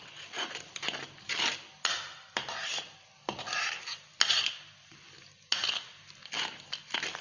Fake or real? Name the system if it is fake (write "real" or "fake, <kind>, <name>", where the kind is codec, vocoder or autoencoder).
real